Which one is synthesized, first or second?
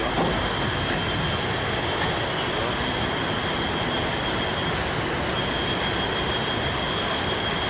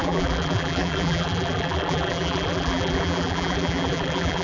second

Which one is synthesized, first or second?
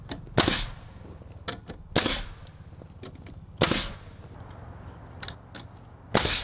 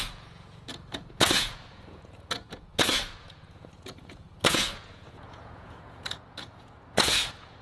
second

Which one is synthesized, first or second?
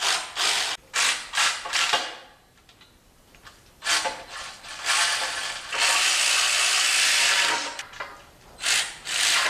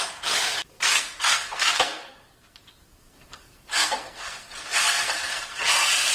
second